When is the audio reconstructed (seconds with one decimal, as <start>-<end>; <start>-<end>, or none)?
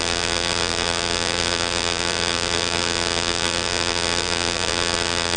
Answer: 0.0-5.4